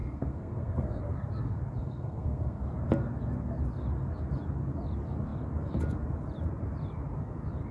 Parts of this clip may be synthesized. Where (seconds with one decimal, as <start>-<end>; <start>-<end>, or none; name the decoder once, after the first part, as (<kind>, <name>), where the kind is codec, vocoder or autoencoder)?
0.0-1.0 (codec, SNAC); 1.8-2.6